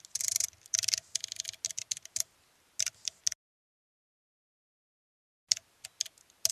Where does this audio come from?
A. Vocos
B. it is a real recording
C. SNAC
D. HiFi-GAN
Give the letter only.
B